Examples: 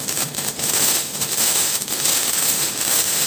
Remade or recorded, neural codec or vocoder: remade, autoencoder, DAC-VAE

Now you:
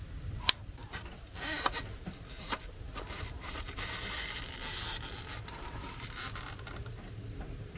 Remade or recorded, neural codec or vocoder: remade, vocoder, BigVGAN v2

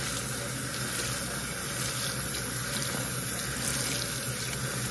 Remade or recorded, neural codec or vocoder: recorded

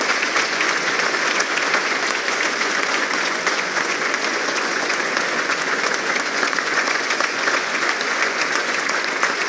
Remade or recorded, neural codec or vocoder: remade, vocoder, Vocos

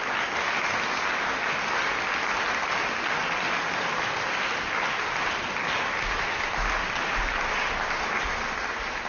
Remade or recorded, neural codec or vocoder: recorded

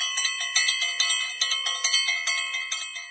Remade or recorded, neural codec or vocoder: recorded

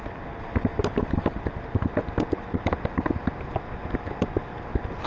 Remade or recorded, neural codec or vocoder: recorded